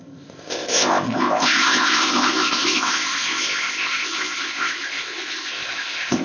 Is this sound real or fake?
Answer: fake